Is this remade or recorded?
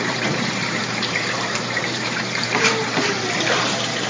remade